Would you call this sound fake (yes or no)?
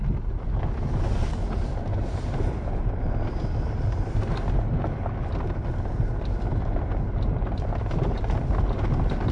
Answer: no